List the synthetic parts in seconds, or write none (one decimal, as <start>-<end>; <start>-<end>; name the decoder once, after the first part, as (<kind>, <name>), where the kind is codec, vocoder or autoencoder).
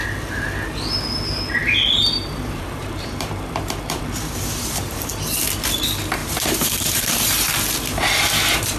1.6-5.1 (vocoder, BigVGAN v2); 6.2-7.4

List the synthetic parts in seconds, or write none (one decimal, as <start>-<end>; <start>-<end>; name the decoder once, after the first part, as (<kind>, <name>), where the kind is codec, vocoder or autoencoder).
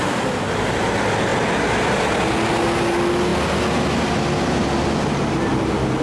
none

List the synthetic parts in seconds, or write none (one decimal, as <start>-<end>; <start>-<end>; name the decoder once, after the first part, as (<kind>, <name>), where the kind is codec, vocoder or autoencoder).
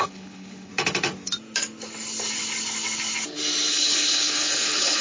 0.0-0.7 (codec, HILCodec); 3.7-5.0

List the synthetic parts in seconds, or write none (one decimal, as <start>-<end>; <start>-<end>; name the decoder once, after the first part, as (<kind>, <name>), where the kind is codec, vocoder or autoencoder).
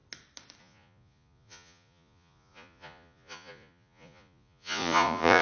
0.6-5.4 (vocoder, Vocos)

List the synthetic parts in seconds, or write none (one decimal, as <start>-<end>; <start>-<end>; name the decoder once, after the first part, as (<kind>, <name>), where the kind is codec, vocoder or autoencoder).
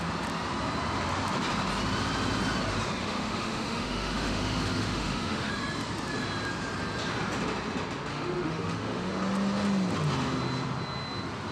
3.0-5.5 (autoencoder, DAC-VAE); 8.1-9.1